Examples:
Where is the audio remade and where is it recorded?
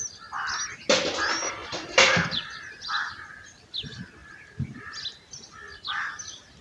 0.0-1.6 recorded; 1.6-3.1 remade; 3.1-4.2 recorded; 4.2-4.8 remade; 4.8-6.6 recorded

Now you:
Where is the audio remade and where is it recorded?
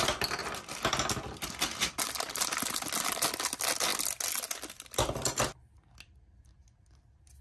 0.0-7.4 recorded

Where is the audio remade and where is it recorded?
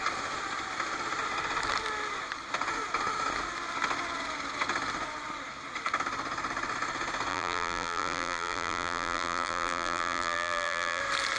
0.0-7.3 recorded; 7.3-11.0 remade; 11.0-11.4 recorded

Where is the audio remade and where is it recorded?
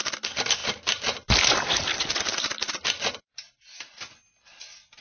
0.0-5.0 remade